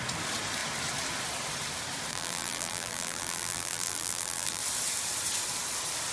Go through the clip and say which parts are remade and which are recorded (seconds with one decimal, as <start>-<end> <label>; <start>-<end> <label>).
0.0-2.1 recorded; 2.1-4.6 remade; 4.6-6.1 recorded